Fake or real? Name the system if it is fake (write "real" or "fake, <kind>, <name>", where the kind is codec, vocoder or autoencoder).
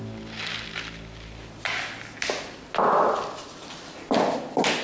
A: real